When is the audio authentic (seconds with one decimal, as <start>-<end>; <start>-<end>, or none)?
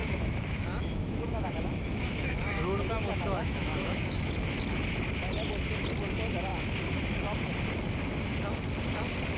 4.3-9.4